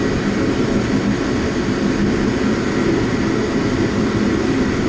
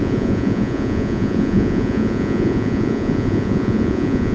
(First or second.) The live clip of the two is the first